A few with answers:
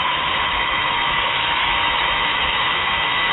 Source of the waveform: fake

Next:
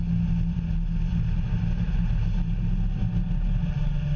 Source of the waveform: real